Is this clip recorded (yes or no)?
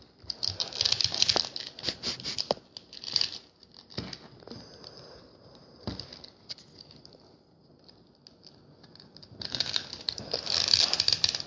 yes